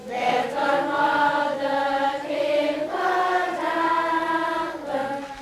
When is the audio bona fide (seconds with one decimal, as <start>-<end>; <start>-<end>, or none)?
3.4-5.4